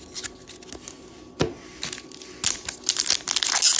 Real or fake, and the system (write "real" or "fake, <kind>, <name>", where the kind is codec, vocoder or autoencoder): real